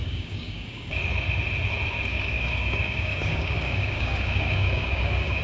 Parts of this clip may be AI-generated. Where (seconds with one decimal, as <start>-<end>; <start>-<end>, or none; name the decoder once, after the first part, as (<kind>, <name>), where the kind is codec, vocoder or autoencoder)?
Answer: 0.0-1.0 (codec, DAC); 2.1-5.4